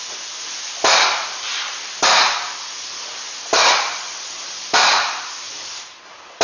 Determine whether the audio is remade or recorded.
recorded